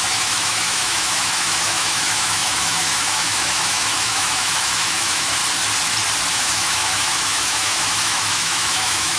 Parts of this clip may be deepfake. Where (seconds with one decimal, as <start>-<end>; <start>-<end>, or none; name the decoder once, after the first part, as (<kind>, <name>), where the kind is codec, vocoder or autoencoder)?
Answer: 0.0-5.4 (autoencoder, DAC-VAE); 6.3-9.2